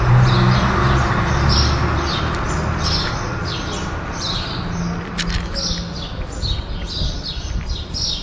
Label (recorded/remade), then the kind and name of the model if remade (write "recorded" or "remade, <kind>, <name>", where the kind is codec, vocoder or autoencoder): recorded